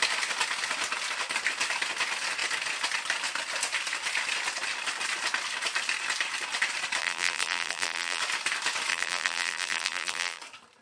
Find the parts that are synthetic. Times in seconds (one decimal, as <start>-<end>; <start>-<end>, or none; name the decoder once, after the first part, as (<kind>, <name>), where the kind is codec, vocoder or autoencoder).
7.0-8.2 (vocoder, BigVGAN v2); 8.9-10.4